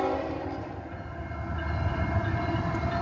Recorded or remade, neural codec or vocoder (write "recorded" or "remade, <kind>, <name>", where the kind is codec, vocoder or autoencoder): recorded